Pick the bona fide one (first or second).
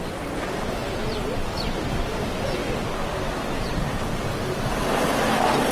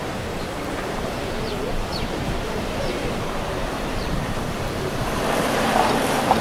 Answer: first